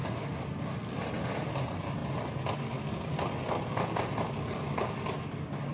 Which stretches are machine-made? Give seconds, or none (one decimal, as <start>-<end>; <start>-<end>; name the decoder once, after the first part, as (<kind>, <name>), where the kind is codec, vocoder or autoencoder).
none